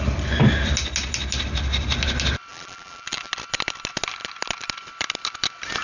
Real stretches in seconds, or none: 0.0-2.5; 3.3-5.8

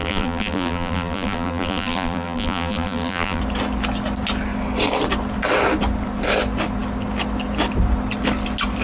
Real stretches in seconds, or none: 3.4-8.8

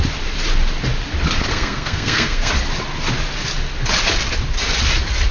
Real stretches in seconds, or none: 0.0-1.5; 2.5-5.3

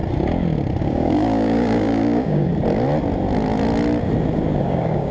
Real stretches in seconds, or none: 0.0-0.8; 2.5-4.6